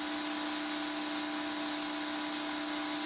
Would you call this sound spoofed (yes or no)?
no